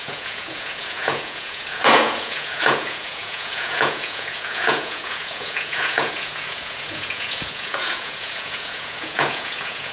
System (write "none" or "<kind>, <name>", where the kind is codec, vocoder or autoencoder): vocoder, Vocos